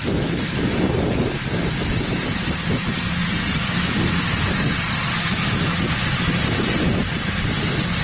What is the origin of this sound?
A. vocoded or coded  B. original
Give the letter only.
B